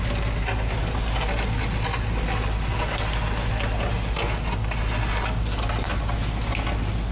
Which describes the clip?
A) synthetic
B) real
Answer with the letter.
B